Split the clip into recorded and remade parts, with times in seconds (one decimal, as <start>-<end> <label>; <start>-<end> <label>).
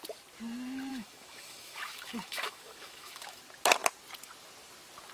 0.0-0.9 recorded; 0.9-3.4 remade; 3.4-5.1 recorded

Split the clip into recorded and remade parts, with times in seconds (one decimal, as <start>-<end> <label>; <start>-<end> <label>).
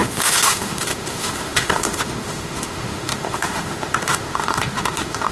0.0-5.3 remade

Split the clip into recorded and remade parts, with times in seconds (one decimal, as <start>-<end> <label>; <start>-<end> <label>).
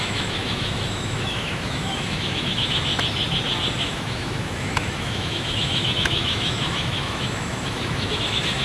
0.0-2.9 remade; 2.9-3.8 recorded; 3.8-8.6 remade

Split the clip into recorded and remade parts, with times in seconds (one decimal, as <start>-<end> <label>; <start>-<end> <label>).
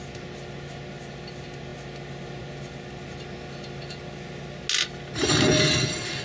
0.0-6.2 recorded